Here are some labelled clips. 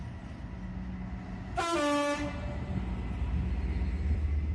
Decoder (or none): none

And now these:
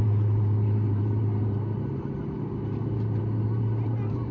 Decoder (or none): vocoder, BigVGAN v2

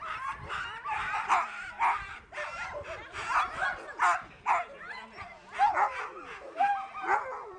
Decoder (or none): vocoder, BigVGAN v2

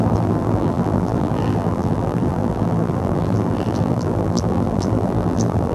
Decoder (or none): vocoder, BigVGAN v2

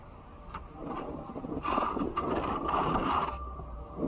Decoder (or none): vocoder, BigVGAN v2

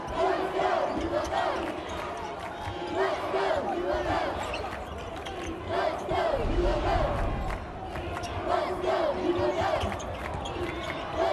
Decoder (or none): none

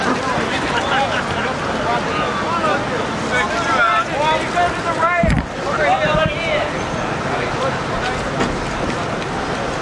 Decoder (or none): none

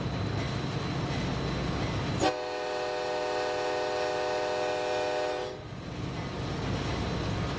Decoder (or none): none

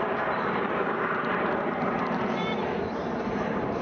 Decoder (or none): vocoder, BigVGAN v2